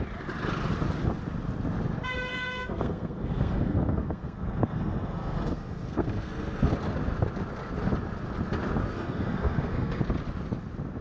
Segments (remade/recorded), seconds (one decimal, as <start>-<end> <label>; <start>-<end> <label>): 0.0-2.3 recorded; 2.3-6.7 remade; 6.7-8.8 recorded; 8.8-10.0 remade; 10.0-11.0 recorded